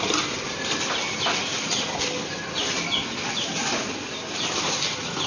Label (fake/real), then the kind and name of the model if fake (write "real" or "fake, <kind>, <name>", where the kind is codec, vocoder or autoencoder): real